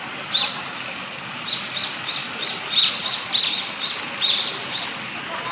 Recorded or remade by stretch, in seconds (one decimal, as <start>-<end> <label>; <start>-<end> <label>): 0.0-0.4 recorded; 0.4-1.5 remade; 1.5-5.5 recorded